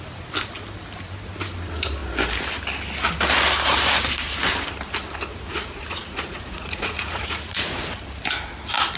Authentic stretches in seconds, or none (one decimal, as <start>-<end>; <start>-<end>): 0.0-5.3; 7.9-9.0